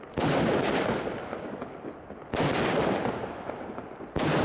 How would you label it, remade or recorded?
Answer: recorded